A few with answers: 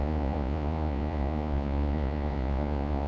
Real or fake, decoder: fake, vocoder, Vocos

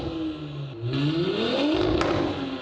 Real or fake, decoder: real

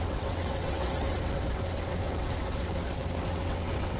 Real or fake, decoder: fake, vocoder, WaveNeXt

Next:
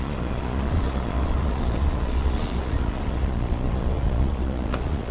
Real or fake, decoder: fake, vocoder, Vocos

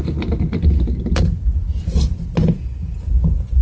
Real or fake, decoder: real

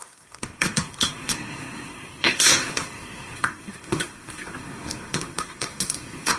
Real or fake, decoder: fake, codec, SNAC